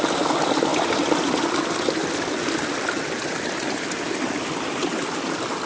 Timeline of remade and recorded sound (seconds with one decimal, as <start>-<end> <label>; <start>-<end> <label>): 0.0-5.7 recorded